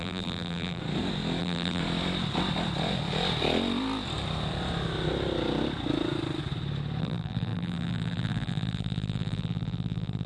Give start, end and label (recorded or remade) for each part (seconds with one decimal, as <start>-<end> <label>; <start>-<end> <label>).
0.0-0.8 remade; 0.8-1.4 recorded; 1.4-1.8 remade; 1.8-7.0 recorded; 7.0-10.3 remade